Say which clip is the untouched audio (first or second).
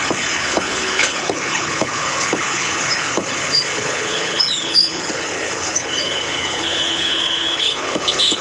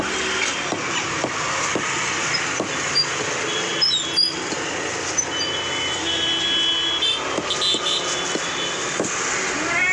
second